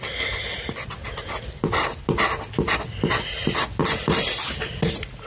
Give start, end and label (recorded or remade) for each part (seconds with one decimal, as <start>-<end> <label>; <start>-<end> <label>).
0.0-5.3 recorded